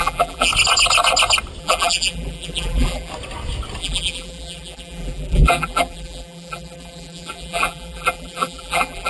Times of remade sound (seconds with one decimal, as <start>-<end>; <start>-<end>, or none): 0.0-0.5; 1.6-3.1; 3.8-9.1